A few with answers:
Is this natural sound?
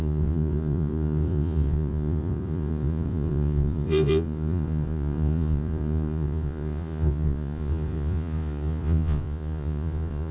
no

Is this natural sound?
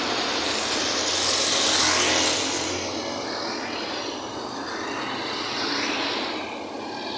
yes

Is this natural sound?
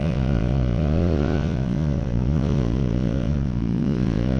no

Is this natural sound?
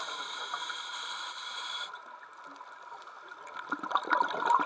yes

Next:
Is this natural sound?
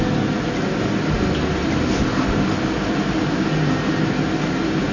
yes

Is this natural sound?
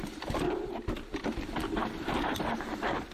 yes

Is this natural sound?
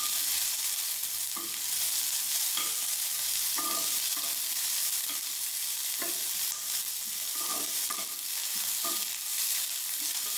yes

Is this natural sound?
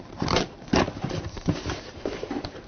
no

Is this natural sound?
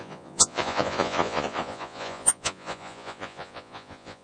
no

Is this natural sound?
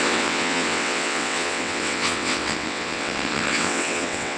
no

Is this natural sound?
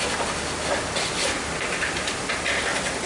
yes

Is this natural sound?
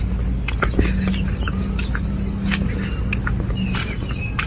yes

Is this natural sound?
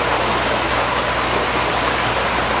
yes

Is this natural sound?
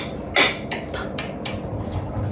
yes